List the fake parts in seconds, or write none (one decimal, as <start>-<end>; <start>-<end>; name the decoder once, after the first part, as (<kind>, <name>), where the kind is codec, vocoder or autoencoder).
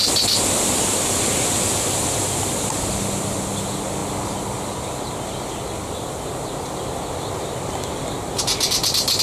none